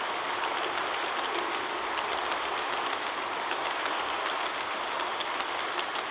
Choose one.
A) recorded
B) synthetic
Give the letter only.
A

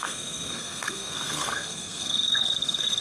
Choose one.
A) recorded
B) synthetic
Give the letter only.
B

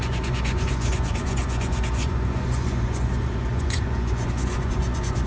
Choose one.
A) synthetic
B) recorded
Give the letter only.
A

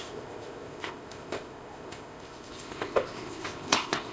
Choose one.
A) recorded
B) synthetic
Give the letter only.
B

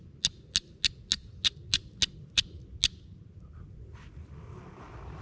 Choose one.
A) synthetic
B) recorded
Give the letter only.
B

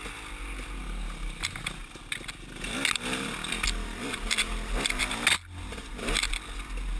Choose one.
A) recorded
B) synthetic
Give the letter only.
A